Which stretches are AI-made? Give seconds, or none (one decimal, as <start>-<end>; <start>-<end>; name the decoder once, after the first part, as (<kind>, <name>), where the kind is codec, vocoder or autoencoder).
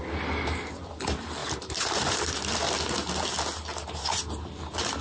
1.4-2.4 (vocoder, BigVGAN v2); 3.7-4.2